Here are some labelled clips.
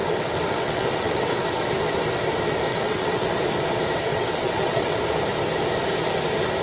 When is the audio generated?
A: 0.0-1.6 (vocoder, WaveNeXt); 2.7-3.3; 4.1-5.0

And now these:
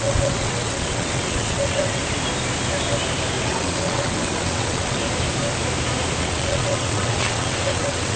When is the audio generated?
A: 0.0-2.0 (vocoder, WaveNeXt); 3.4-5.0; 6.2-8.2

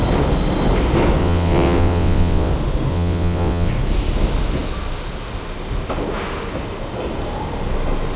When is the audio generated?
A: 1.2-2.5 (vocoder, WaveNeXt); 2.9-3.7

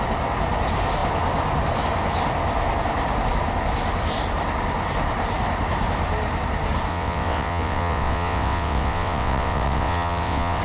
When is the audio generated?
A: 6.9-10.6 (vocoder, WaveNeXt)